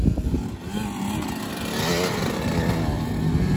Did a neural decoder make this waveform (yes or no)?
no